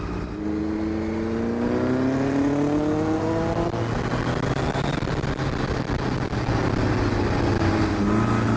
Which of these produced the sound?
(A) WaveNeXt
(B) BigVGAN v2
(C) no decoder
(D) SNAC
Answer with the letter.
C